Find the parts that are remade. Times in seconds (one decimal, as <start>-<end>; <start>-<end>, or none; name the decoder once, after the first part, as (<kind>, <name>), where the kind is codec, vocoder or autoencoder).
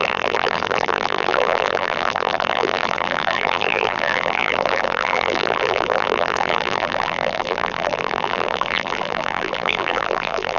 0.0-10.6 (vocoder, BigVGAN v2)